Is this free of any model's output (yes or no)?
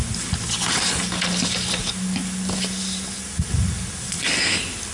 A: yes